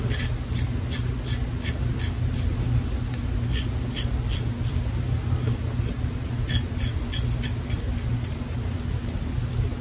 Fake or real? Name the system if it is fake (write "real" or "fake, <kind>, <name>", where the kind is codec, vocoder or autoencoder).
real